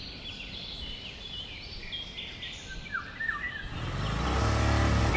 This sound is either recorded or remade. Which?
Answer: recorded